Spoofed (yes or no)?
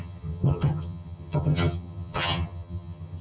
yes